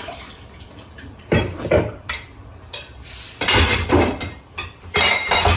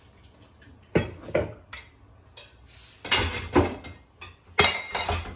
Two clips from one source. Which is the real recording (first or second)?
second